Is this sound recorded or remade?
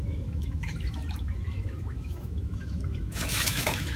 remade